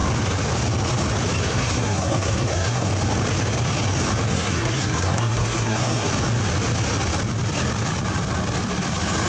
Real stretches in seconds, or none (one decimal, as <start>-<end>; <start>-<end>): 0.0-1.5; 2.9-4.3; 6.1-9.3